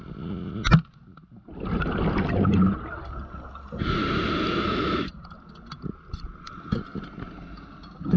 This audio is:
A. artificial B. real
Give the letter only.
B